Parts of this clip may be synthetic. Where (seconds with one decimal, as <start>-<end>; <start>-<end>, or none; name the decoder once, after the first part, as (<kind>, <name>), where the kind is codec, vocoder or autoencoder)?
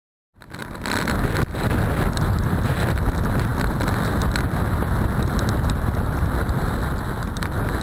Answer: none